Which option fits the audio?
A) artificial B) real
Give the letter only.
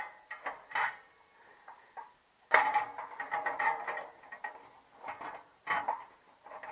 B